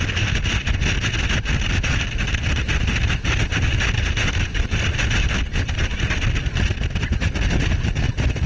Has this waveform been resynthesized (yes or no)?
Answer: no